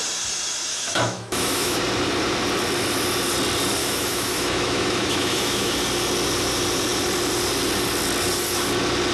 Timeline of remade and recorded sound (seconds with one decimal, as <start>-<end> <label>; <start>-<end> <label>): 0.0-0.7 recorded; 0.7-1.8 remade; 1.8-3.8 recorded; 3.8-5.7 remade; 5.7-9.1 recorded